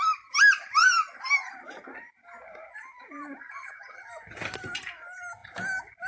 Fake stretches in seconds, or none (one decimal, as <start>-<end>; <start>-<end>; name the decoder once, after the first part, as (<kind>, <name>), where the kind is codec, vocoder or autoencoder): 3.4-4.1 (vocoder, HiFi-GAN)